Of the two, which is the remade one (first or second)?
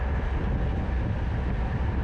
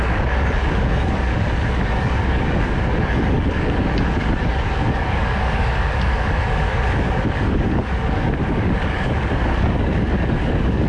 second